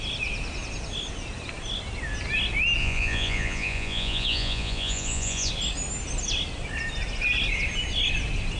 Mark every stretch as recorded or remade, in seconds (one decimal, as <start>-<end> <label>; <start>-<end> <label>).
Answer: 0.0-2.8 recorded; 2.8-5.5 remade; 5.5-8.6 recorded